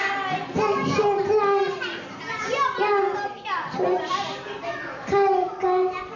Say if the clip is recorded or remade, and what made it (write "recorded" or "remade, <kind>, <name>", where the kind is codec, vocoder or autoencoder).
recorded